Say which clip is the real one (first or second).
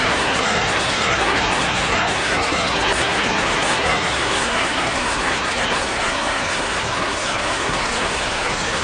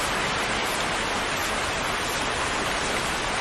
second